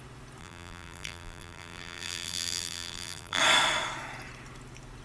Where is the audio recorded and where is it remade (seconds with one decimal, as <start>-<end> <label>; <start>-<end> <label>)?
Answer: 0.0-0.4 recorded; 0.4-3.4 remade; 3.4-5.0 recorded